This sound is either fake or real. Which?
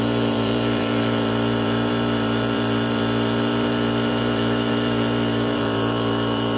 fake